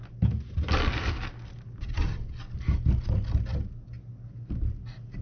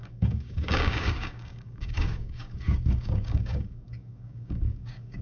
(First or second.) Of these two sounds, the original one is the first